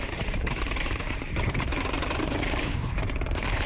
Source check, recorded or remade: remade